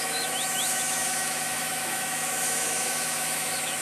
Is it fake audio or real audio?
fake